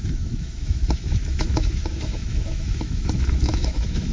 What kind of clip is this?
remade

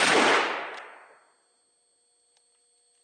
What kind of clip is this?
recorded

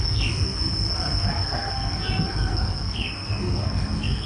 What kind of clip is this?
remade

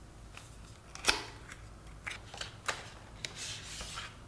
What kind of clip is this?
recorded